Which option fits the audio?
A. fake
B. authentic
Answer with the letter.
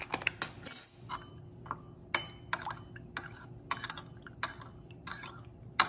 B